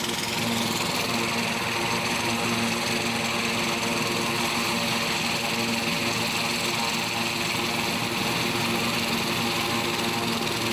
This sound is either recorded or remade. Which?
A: recorded